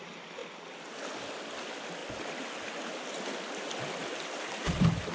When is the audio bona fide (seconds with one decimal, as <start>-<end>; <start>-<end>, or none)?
0.0-5.1